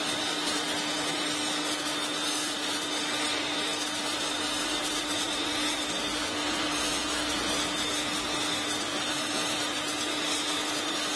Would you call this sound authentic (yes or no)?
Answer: yes